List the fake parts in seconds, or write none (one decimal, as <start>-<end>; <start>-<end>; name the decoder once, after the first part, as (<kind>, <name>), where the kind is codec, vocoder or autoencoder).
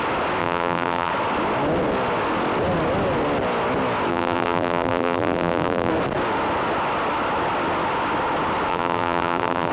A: 0.4-1.1 (vocoder, BigVGAN v2); 4.1-5.9; 8.7-9.7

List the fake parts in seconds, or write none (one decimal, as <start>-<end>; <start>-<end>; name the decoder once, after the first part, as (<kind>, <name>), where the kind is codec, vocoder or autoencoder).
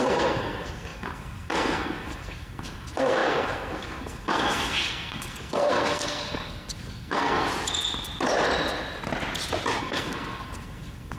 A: 0.0-7.5 (codec, SNAC); 9.8-11.2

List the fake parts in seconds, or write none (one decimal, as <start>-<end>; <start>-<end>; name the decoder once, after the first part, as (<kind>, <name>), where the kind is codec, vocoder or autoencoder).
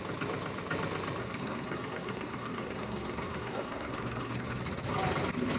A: 1.2-4.6 (codec, SNAC)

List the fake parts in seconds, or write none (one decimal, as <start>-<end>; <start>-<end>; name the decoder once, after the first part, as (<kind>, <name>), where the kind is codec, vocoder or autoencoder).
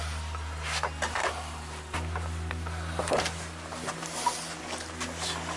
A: none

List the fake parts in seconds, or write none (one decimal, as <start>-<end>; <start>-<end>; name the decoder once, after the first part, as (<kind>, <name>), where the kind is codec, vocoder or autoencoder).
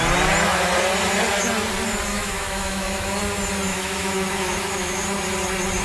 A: 2.1-3.2 (autoencoder, DAC-VAE); 3.7-5.0